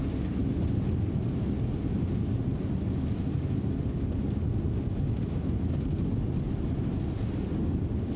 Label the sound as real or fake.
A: real